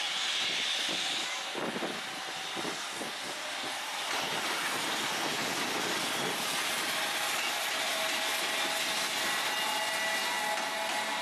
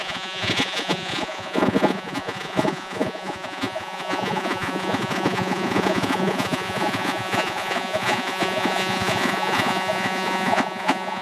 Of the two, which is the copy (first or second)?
second